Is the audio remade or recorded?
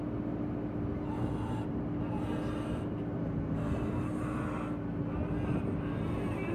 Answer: recorded